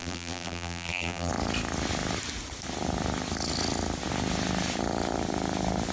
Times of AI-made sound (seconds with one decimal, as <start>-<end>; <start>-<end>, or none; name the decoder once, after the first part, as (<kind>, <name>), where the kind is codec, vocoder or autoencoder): 0.0-1.3 (vocoder, BigVGAN v2)